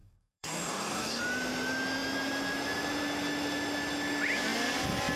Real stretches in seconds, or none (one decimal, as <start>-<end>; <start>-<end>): 1.2-5.2